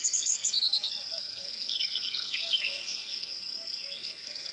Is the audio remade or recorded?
remade